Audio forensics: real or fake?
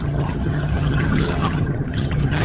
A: fake